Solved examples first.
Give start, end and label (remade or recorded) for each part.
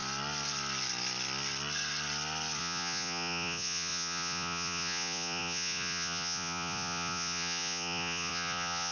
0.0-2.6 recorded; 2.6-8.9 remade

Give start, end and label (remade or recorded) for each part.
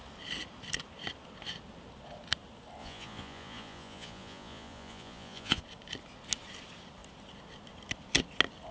0.0-2.8 recorded; 2.8-5.6 remade; 5.6-8.7 recorded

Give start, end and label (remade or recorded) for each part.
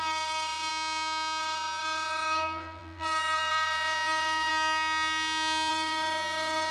0.0-0.7 remade; 0.7-1.4 recorded; 1.4-4.5 remade; 4.5-5.7 recorded; 5.7-6.7 remade